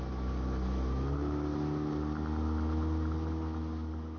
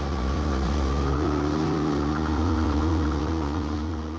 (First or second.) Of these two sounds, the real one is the first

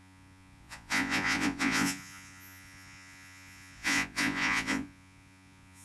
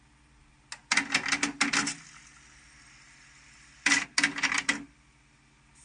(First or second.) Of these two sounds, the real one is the second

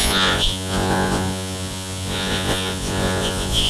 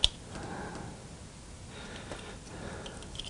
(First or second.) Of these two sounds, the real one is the second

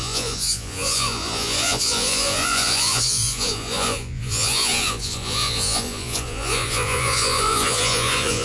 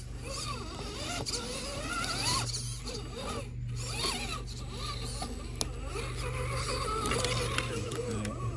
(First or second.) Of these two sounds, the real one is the second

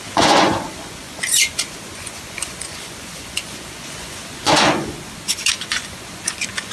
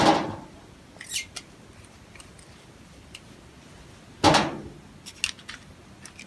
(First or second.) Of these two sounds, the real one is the second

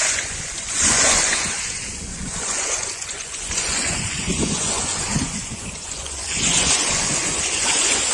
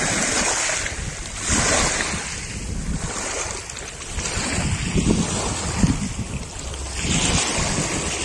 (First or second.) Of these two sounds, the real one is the second